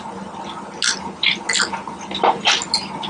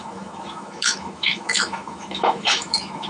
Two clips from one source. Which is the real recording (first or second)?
first